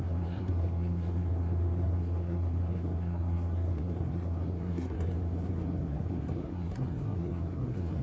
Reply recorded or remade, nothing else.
remade